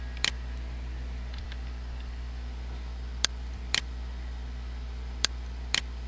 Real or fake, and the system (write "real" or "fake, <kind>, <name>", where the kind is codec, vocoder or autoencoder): fake, vocoder, BigVGAN v2